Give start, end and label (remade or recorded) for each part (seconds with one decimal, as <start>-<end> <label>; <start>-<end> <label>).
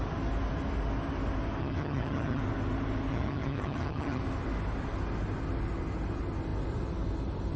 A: 0.0-1.6 recorded; 1.6-2.4 remade; 2.4-3.1 recorded; 3.1-4.2 remade; 4.2-7.6 recorded